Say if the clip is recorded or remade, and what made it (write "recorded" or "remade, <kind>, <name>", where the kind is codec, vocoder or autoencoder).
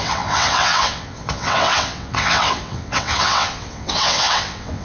remade, vocoder, WaveNeXt